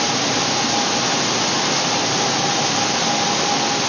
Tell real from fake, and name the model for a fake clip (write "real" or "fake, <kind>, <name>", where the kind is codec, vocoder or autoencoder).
real